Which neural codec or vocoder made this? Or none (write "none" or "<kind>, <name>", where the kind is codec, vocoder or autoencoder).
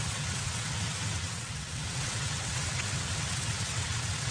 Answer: vocoder, WaveNeXt